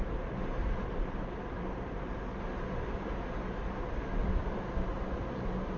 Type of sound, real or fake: fake